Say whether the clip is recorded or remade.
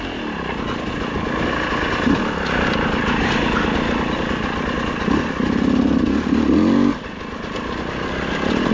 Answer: recorded